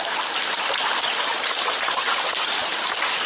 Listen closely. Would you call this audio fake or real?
fake